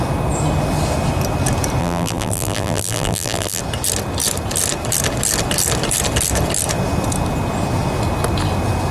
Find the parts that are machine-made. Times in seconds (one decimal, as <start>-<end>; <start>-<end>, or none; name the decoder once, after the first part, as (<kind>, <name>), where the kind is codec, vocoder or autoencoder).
1.8-3.6 (vocoder, BigVGAN v2)